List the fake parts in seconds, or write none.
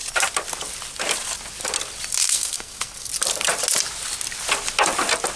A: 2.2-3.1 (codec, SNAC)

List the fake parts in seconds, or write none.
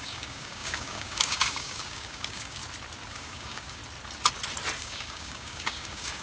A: 0.0-2.6 (codec, DAC); 3.1-3.8; 4.8-6.2